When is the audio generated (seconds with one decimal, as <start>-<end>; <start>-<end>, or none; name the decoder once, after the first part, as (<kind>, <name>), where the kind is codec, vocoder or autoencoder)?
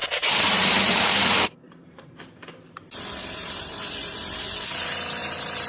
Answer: 0.0-2.2 (vocoder, BigVGAN v2); 3.2-4.2